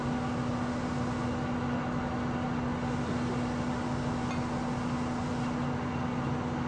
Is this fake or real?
real